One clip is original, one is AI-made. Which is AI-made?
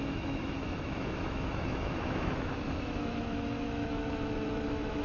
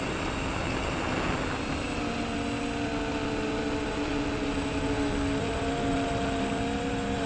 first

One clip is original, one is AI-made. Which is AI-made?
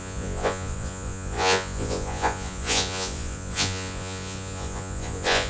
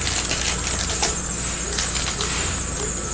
first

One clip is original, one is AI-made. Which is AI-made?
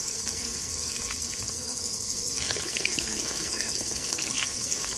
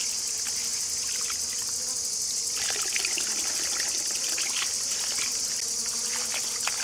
first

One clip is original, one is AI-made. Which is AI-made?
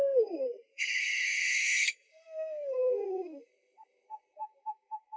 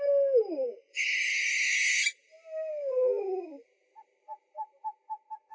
first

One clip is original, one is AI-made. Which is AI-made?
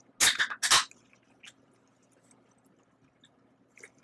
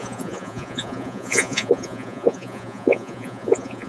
second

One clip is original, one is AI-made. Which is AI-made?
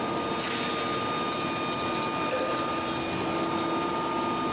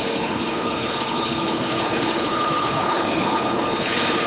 second